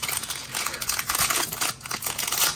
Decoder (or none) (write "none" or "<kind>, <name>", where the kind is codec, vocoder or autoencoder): vocoder, Vocos